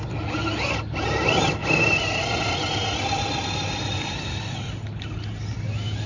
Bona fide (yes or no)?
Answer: yes